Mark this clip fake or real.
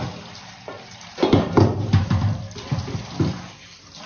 fake